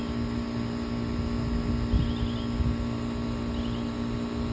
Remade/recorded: recorded